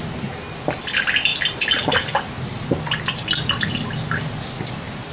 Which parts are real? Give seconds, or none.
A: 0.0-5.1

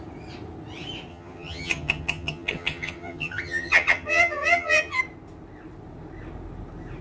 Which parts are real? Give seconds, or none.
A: 0.0-1.1; 5.0-7.0

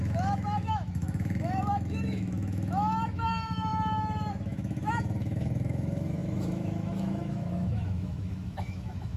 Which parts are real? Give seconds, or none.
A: none